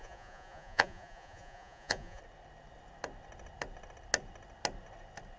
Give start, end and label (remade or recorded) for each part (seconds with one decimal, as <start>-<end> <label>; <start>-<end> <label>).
0.0-2.2 remade; 2.2-5.4 recorded